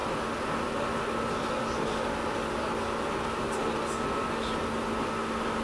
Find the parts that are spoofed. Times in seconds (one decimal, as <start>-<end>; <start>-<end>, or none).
none